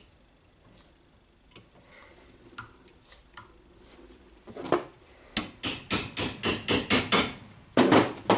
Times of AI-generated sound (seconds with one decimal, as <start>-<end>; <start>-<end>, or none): none